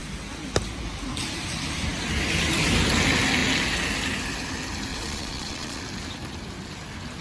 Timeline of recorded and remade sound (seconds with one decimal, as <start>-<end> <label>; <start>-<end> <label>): 0.0-4.9 recorded; 4.9-5.8 remade; 5.8-7.2 recorded